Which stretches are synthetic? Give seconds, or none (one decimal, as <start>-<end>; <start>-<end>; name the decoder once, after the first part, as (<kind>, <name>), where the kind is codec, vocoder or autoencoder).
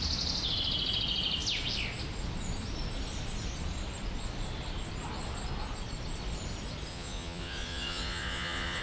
6.9-8.8 (vocoder, Vocos)